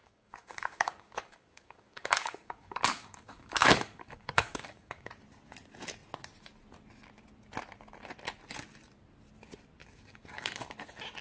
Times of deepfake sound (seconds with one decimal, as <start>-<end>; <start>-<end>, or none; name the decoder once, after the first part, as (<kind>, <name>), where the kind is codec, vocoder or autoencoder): 0.0-5.1 (codec, DAC); 9.8-10.7